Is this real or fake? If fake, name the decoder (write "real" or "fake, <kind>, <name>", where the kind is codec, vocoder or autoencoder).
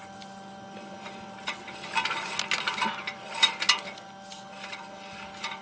real